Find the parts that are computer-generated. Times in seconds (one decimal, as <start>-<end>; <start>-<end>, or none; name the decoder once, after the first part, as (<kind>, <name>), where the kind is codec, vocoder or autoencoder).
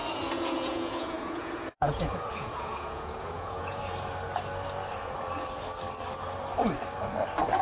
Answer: 0.0-3.8 (vocoder, Vocos)